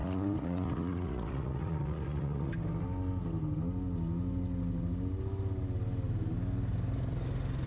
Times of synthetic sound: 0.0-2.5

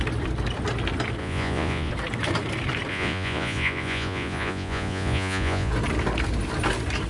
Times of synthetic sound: 1.2-1.9; 2.9-5.7

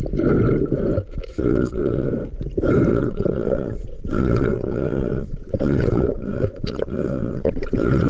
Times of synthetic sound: 1.3-2.1; 2.9-8.1

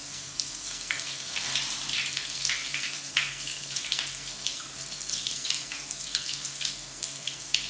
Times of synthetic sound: 0.0-1.5; 2.1-7.7

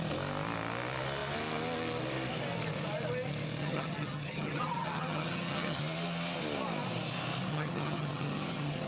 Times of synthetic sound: 3.6-5.8; 7.5-8.9

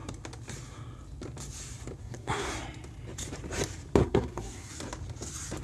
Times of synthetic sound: 2.0-2.5; 4.0-4.7

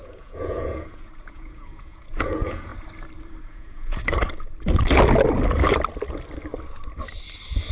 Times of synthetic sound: 0.0-2.7; 3.4-4.2